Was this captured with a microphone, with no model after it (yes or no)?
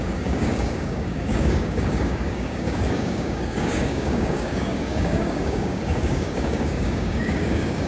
no